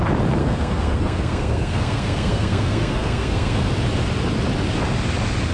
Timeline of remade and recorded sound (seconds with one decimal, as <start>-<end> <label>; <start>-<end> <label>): 0.0-0.4 recorded; 0.4-3.7 remade; 3.7-5.5 recorded